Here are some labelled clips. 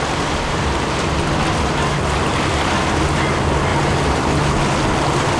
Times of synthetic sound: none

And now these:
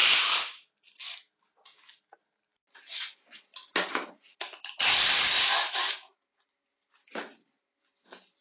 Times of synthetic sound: none

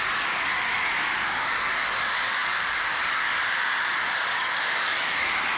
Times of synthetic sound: 0.0-5.6

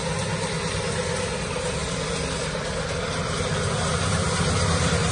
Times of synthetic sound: none